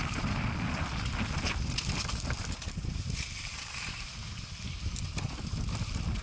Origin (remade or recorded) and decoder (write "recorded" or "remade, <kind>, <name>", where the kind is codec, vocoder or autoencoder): recorded